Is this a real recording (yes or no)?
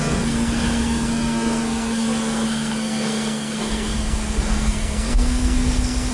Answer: no